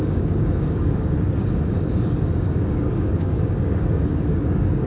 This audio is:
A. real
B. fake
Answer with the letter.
B